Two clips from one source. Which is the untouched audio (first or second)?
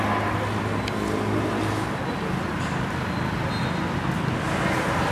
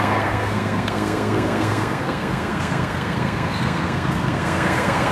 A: first